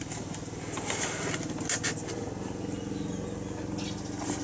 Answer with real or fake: real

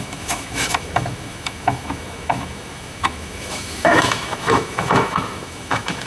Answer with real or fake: fake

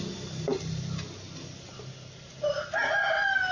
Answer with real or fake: real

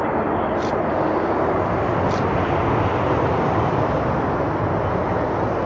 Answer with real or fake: real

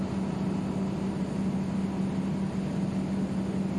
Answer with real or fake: real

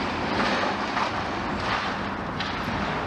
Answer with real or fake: real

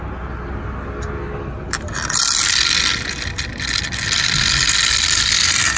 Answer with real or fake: real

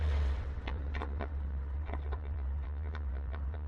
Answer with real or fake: fake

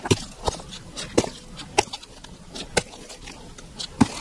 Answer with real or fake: real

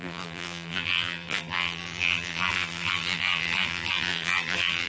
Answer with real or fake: fake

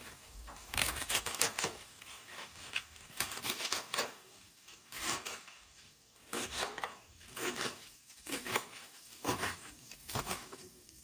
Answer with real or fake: fake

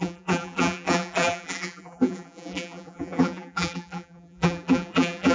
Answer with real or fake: fake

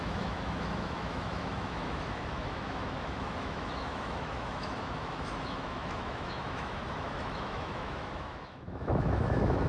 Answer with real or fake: fake